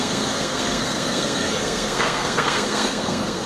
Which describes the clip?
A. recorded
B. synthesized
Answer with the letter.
B